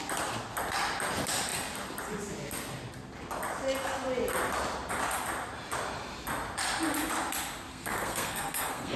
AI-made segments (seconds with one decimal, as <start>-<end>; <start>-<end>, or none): 7.7-9.0